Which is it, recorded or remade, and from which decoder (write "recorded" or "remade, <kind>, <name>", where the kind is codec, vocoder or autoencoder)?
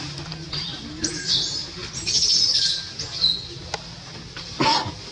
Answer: recorded